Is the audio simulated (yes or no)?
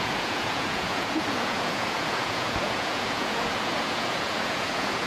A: yes